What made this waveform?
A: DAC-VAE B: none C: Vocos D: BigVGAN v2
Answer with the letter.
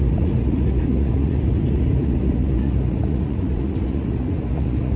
C